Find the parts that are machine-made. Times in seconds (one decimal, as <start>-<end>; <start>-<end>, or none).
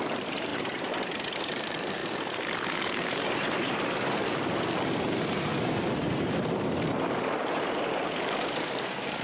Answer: 0.0-2.0; 2.8-5.5; 6.9-9.2